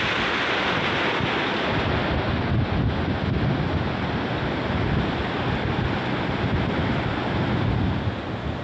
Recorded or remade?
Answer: recorded